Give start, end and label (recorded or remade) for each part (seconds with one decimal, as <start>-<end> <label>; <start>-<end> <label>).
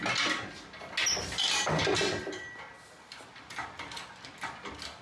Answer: 0.0-5.0 recorded